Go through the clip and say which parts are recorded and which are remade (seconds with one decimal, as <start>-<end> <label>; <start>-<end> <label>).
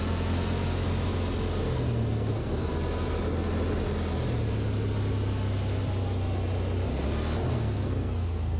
0.0-1.6 recorded; 1.6-2.7 remade; 2.7-7.5 recorded; 7.5-8.6 remade